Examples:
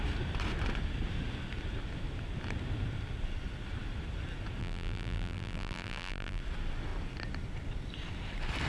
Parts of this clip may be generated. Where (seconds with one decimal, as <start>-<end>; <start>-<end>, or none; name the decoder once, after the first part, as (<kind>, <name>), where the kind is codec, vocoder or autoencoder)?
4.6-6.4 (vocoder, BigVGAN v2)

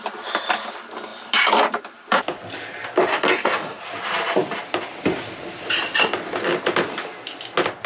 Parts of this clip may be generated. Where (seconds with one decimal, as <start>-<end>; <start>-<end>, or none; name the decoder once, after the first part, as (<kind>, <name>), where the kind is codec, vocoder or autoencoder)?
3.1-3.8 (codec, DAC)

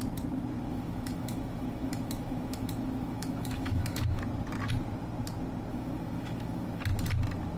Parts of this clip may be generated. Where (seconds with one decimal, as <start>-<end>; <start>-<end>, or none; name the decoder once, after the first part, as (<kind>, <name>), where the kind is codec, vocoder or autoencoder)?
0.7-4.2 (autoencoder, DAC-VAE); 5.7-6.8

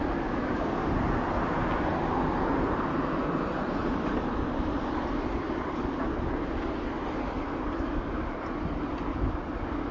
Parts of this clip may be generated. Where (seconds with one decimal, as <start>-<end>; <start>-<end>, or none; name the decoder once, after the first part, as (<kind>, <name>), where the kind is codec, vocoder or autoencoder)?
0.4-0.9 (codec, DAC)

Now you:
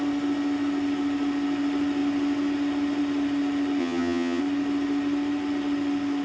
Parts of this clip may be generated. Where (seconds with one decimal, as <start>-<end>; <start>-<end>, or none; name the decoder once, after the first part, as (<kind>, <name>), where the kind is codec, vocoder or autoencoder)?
3.8-4.4 (vocoder, HiFi-GAN)

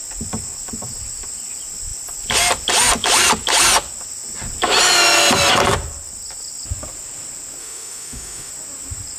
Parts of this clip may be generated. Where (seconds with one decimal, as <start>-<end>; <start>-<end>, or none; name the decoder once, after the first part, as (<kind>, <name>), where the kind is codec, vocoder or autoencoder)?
7.6-8.5 (autoencoder, DAC-VAE)